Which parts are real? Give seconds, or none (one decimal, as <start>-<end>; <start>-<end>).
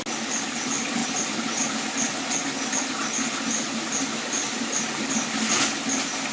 0.0-6.3